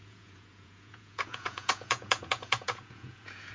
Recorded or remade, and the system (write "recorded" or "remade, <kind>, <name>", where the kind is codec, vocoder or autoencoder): remade, vocoder, Vocos